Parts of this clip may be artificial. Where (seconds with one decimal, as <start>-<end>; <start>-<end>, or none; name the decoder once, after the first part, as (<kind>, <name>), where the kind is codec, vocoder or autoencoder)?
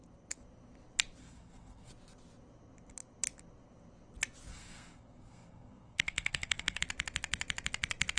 1.2-1.9 (codec, SNAC); 4.5-6.8